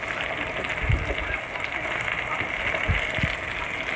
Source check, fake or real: real